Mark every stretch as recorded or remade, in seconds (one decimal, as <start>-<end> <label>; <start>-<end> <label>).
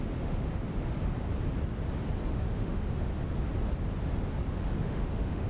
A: 0.0-0.7 remade; 0.7-2.3 recorded; 2.3-3.1 remade; 3.1-4.8 recorded; 4.8-5.5 remade